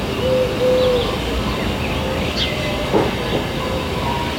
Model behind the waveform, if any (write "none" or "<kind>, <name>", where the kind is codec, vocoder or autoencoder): none